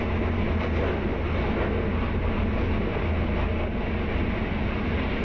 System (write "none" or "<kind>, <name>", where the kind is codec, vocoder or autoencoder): none